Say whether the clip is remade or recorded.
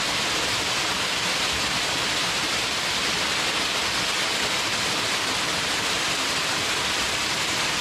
recorded